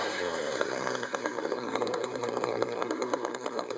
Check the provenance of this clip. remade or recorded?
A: remade